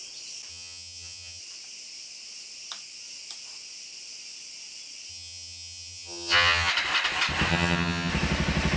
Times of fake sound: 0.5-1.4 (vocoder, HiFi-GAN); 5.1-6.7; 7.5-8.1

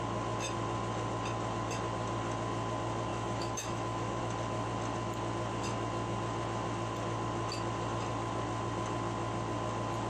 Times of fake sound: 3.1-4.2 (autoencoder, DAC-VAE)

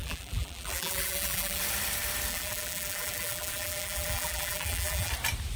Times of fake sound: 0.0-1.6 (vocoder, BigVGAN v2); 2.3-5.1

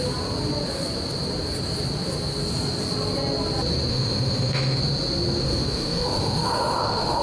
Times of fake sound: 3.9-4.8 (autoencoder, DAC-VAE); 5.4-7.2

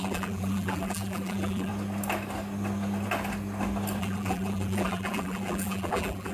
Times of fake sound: 0.0-1.7 (vocoder, BigVGAN v2); 4.0-6.3